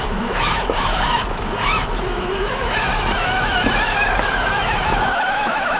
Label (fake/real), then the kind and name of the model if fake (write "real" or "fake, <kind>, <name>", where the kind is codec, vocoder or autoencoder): fake, autoencoder, DAC-VAE